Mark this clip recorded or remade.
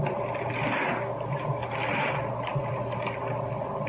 recorded